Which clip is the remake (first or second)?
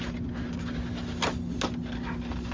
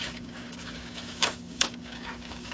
second